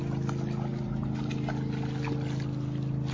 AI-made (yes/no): no